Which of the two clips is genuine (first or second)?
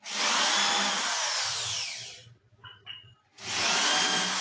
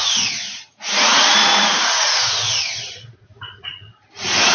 first